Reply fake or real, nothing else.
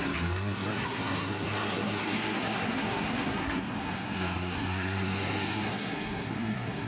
fake